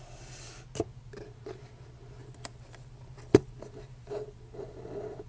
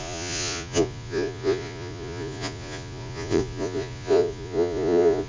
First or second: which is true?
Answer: first